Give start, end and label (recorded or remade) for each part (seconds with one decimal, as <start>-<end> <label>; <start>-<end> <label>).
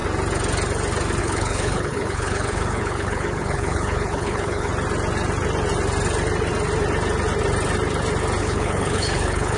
0.0-1.2 recorded; 1.2-4.7 remade; 4.7-8.4 recorded; 8.4-9.6 remade